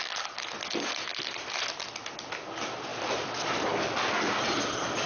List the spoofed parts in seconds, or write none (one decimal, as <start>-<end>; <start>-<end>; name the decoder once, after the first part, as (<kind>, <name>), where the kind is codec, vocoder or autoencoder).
none